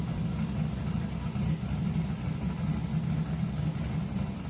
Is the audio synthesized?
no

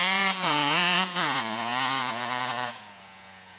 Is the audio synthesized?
yes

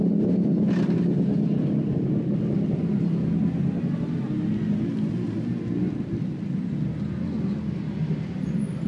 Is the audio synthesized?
no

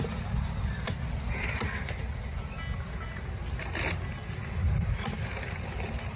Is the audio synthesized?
no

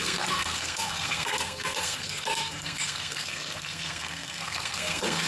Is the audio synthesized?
yes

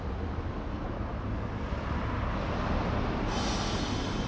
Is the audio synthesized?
no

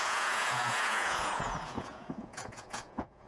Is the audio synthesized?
yes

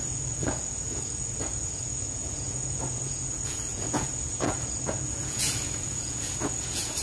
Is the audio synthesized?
yes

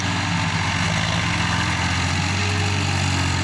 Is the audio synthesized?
no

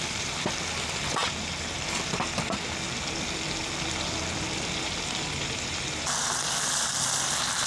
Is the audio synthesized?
no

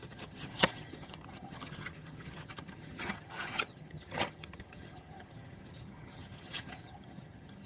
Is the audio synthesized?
yes